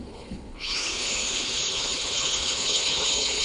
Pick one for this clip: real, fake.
fake